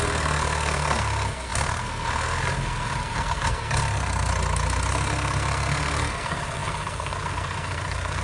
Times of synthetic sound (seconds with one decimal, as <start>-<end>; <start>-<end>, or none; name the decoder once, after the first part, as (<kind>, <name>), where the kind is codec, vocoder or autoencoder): 0.0-4.3 (codec, SNAC); 4.9-8.2